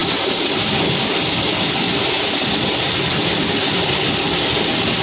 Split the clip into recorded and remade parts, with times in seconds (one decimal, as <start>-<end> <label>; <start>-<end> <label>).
0.0-5.0 recorded